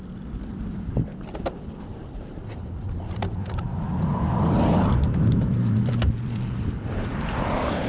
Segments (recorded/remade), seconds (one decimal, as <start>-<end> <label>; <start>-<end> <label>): 0.0-1.9 recorded; 1.9-5.8 remade; 5.8-7.9 recorded